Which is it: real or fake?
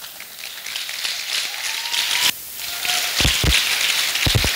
real